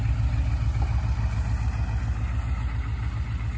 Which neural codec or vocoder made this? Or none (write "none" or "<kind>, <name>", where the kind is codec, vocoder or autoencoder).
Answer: none